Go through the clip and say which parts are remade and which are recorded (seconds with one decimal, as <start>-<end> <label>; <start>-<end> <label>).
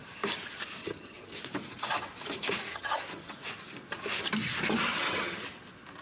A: 0.0-0.8 recorded; 0.8-1.4 remade; 1.4-2.7 recorded; 2.7-3.3 remade; 3.3-4.9 recorded; 4.9-5.4 remade; 5.4-6.0 recorded